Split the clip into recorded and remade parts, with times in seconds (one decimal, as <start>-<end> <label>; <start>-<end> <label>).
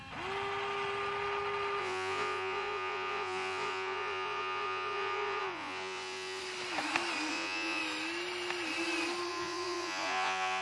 0.0-1.8 recorded; 1.8-6.4 remade; 6.4-7.3 recorded; 7.3-7.8 remade; 7.8-9.3 recorded; 9.3-10.6 remade